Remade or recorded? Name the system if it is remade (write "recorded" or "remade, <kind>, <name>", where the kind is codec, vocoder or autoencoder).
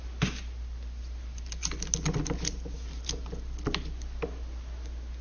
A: recorded